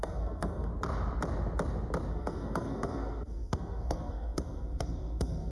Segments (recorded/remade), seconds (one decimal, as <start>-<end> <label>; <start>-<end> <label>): 0.0-0.7 remade; 0.7-2.1 recorded; 2.1-5.5 remade